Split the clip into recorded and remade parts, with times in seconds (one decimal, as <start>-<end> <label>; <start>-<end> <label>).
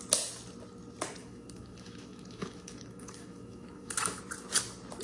0.0-1.2 recorded; 1.2-4.2 remade; 4.2-5.0 recorded